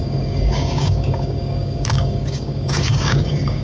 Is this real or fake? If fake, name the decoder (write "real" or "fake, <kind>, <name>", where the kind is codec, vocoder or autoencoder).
fake, codec, DAC